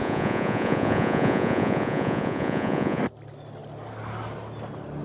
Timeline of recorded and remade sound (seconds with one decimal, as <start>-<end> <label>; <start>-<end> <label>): 0.0-3.0 remade; 3.0-5.0 recorded